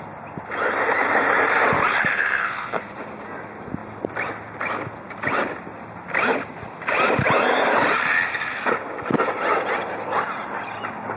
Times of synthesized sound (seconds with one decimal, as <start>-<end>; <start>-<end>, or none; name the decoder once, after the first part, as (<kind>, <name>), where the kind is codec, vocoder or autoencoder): 2.1-2.8 (codec, SNAC)